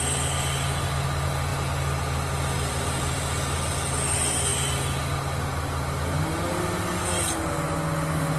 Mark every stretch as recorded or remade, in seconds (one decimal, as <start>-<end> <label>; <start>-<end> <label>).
0.0-8.4 recorded